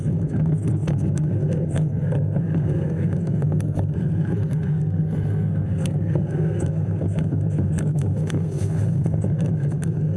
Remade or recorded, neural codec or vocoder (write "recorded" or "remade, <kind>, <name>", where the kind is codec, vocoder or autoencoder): remade, codec, SNAC